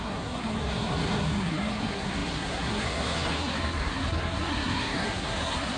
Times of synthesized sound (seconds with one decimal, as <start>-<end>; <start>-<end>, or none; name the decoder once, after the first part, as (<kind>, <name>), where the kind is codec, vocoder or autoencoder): 0.0-5.8 (codec, SNAC)

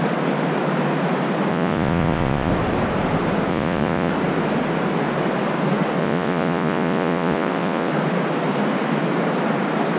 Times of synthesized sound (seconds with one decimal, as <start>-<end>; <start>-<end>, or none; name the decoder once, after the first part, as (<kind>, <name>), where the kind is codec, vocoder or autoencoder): 1.5-2.5 (vocoder, Vocos); 3.5-4.1; 6.0-7.9

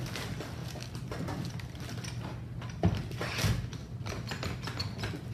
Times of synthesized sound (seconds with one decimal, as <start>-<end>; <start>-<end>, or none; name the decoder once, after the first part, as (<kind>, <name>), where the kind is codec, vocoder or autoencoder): 0.6-2.2 (vocoder, BigVGAN v2); 3.8-4.7

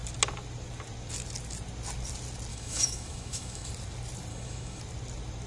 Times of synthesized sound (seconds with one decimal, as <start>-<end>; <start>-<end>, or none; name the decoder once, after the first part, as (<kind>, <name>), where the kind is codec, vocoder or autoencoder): 2.5-3.7 (autoencoder, DAC-VAE); 4.3-4.8

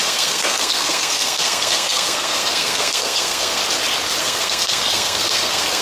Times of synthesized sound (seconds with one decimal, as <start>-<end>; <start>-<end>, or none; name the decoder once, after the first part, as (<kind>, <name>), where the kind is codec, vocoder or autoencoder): 0.0-3.6 (codec, SNAC); 4.2-5.8

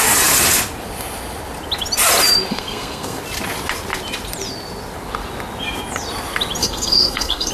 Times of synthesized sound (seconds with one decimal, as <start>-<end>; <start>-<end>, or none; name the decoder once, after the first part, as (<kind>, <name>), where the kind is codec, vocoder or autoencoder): 2.5-3.2 (codec, SNAC); 6.6-7.5

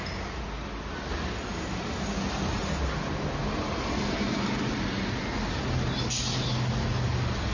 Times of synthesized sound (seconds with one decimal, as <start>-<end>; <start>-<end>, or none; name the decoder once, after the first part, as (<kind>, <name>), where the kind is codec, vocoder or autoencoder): none

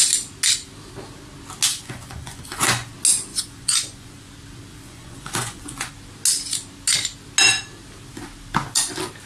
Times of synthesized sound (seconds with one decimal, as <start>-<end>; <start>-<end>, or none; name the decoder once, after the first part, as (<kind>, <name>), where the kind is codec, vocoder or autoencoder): 1.7-2.9 (vocoder, Vocos); 3.3-4.3; 4.7-5.9